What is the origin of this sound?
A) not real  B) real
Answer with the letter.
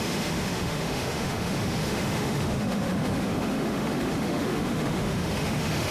A